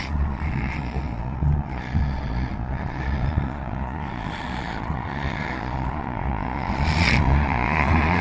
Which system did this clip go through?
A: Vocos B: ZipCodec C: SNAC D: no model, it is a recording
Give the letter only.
A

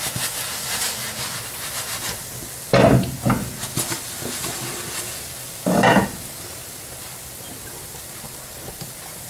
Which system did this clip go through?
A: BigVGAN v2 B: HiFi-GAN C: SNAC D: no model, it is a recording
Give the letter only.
D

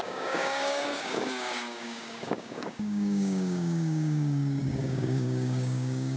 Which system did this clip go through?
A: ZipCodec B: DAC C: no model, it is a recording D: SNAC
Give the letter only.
B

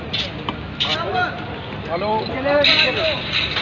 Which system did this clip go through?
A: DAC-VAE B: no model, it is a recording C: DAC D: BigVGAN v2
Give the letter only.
D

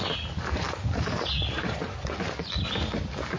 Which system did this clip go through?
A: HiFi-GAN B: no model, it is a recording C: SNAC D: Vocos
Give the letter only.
B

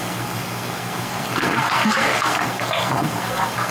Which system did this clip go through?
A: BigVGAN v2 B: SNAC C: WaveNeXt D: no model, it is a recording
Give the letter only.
B